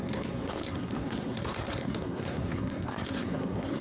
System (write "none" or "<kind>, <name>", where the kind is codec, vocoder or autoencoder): codec, SNAC